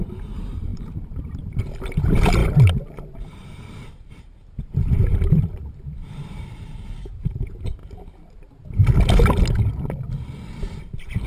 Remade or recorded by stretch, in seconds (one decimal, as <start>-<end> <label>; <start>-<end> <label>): 0.0-7.8 remade; 7.8-10.5 recorded; 10.5-11.3 remade